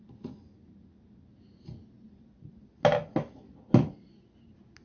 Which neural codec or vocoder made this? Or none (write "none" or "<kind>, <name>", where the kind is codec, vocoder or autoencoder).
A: none